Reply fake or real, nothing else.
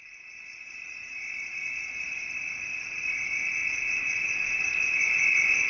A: real